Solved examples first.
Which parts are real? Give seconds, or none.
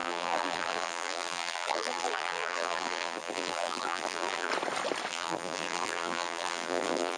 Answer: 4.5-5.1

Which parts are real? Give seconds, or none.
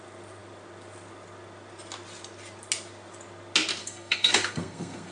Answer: 0.0-3.8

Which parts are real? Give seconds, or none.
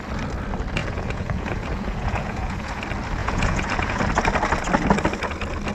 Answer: 0.0-0.8; 2.8-3.2; 4.0-5.7